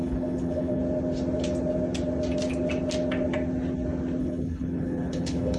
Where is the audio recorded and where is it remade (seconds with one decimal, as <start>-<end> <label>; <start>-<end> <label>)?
0.0-0.8 remade; 0.8-4.2 recorded; 4.2-5.6 remade